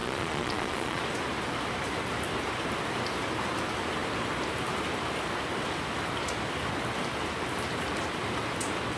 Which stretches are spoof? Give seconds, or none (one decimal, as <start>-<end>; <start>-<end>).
0.0-1.0

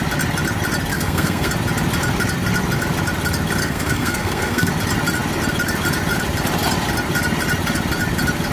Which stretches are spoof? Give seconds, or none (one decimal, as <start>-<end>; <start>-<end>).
0.9-1.5; 3.6-4.7

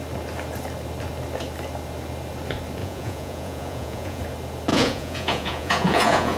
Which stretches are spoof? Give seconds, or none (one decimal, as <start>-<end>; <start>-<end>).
2.8-4.2; 4.7-6.4

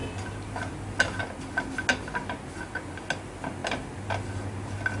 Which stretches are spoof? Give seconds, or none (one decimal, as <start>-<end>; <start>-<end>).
none

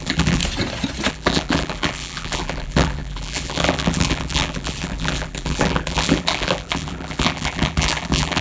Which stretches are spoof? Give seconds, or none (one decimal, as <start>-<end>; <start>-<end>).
0.0-0.4; 1.1-8.4